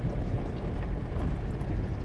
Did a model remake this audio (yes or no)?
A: no